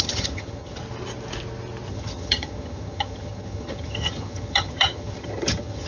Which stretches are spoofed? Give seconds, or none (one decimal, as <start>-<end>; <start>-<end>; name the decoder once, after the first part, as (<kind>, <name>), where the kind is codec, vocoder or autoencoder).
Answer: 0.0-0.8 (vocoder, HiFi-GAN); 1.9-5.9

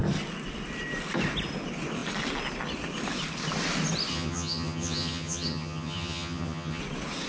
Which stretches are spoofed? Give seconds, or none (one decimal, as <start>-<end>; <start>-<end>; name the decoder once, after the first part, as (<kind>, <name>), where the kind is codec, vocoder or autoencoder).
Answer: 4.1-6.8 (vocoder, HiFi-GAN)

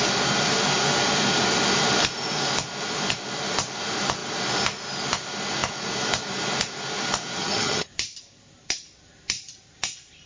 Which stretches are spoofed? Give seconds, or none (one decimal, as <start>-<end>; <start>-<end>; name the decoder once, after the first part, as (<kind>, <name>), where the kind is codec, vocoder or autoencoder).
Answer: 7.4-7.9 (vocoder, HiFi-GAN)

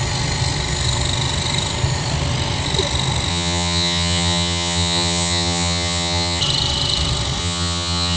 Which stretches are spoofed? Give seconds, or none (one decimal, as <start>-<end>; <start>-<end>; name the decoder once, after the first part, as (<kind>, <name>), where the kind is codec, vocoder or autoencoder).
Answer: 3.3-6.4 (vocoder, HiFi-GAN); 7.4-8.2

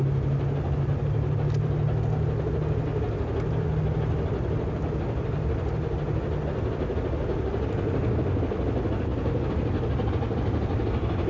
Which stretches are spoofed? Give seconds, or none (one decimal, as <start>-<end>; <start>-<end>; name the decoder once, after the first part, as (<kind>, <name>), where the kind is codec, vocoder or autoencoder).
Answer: none

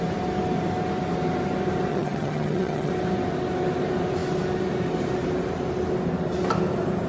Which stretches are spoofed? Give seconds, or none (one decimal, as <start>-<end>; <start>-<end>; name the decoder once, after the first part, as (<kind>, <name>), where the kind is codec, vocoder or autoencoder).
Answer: 1.9-2.9 (vocoder, HiFi-GAN)